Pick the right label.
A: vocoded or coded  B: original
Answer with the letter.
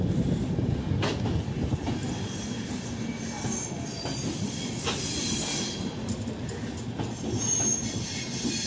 B